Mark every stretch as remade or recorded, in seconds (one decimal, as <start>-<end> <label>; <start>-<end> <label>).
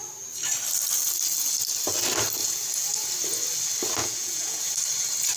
0.0-2.4 recorded; 2.4-3.1 remade; 3.1-4.0 recorded; 4.0-4.6 remade; 4.6-5.4 recorded